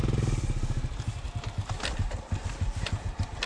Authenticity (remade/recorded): recorded